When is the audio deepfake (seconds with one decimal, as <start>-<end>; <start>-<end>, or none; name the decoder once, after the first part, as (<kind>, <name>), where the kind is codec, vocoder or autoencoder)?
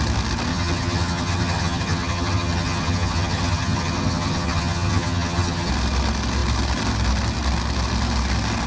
0.5-5.7 (vocoder, HiFi-GAN)